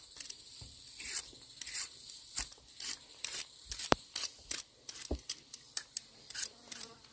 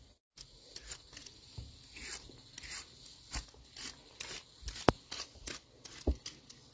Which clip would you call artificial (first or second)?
first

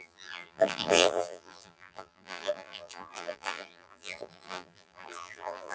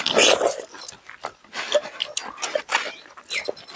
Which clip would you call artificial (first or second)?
first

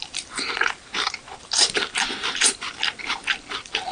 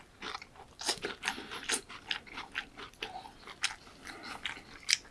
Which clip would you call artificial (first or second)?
first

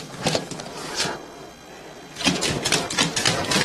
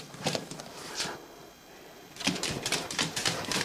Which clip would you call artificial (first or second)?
second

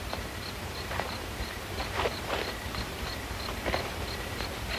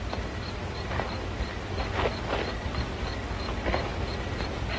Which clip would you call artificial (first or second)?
first